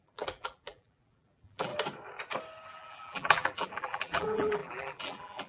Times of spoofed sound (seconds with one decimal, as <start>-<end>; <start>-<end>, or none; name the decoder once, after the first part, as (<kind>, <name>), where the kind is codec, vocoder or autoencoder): 0.0-1.7 (vocoder, BigVGAN v2); 2.7-5.5